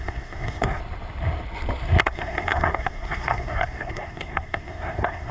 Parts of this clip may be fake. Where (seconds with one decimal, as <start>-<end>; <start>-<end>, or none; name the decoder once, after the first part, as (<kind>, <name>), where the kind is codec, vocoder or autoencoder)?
0.0-0.8 (codec, SNAC); 2.0-5.3